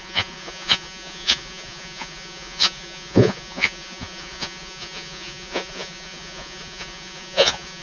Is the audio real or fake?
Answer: fake